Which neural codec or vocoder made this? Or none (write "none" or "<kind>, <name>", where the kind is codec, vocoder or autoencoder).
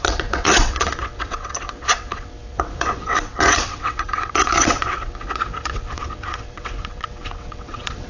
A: vocoder, WaveNeXt